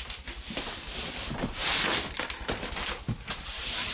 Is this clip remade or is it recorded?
recorded